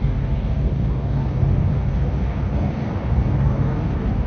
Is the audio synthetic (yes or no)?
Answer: yes